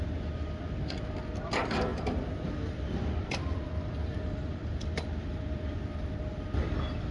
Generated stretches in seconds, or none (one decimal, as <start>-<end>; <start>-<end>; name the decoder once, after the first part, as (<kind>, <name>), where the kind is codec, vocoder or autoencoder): 1.9-6.2 (vocoder, BigVGAN v2)